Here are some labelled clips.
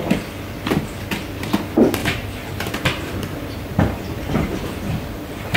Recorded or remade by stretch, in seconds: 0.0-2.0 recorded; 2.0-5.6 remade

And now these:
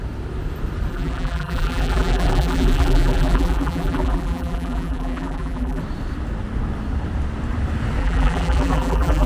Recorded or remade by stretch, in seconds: 0.0-0.9 recorded; 0.9-5.8 remade; 5.8-8.0 recorded; 8.0-9.3 remade